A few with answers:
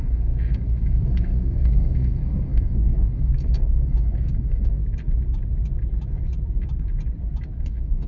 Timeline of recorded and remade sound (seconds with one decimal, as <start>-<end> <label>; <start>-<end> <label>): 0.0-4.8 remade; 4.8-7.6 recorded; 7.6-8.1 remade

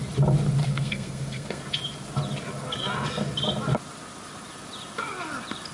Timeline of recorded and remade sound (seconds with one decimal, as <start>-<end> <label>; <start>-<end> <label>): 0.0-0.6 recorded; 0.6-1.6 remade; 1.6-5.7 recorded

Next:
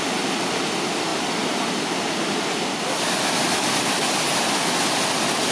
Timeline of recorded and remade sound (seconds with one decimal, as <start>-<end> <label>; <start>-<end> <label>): 0.0-5.5 recorded

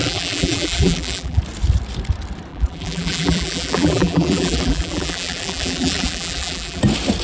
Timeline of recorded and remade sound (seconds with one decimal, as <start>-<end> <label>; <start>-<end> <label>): 0.0-1.4 remade; 1.4-2.5 recorded; 2.5-6.8 remade; 6.8-7.2 recorded

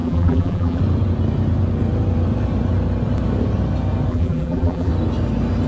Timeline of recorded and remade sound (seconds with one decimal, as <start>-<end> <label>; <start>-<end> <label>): 0.0-0.8 remade; 0.8-4.1 recorded; 4.1-4.9 remade; 4.9-5.7 recorded

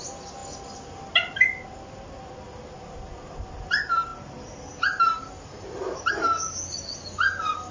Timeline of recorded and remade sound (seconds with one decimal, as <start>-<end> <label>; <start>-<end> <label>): 0.0-7.7 recorded